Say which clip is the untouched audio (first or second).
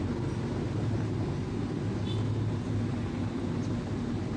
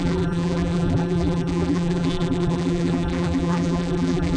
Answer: first